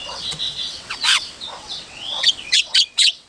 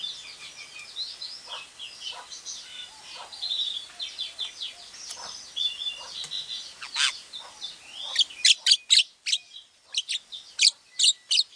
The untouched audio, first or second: second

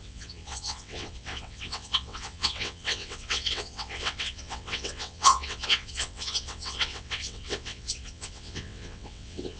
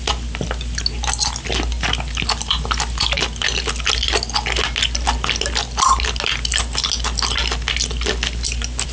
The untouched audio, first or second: second